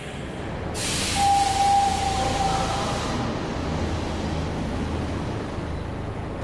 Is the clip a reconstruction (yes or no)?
no